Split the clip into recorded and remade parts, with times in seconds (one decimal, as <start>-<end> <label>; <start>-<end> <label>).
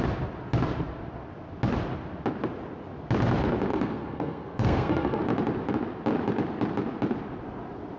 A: 0.0-3.7 recorded; 3.7-5.2 remade; 5.2-8.0 recorded